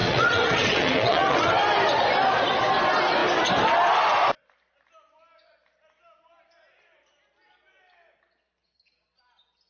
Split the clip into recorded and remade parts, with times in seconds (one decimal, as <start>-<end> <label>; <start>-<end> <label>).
0.0-1.5 remade; 1.5-9.7 recorded